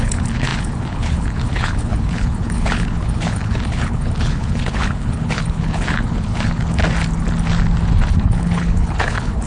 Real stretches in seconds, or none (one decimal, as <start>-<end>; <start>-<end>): 6.8-8.2